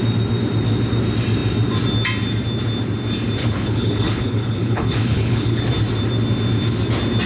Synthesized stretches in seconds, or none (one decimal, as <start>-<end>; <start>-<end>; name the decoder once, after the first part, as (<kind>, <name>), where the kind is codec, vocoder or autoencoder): 3.4-5.6 (codec, HILCodec)